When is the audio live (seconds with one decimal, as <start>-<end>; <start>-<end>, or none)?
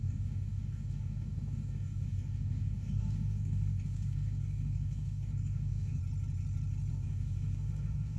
6.0-6.9